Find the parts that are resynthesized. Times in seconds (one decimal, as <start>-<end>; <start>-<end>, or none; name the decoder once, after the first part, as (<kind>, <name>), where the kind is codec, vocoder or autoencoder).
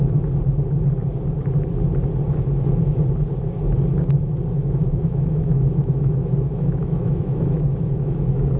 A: 4.6-8.6 (autoencoder, DAC-VAE)